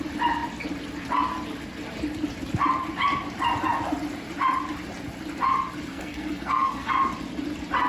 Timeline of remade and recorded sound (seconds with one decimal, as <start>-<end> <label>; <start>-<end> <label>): 0.0-5.9 recorded; 5.9-6.9 remade; 6.9-7.9 recorded

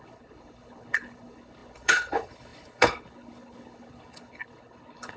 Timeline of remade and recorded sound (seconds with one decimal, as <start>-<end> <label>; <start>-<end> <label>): 0.0-5.2 remade

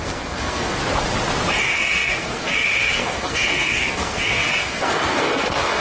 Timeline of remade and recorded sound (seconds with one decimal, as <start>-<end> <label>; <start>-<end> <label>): 0.0-0.8 remade; 0.8-1.6 recorded; 1.6-5.8 remade